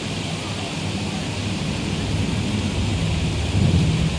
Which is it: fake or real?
real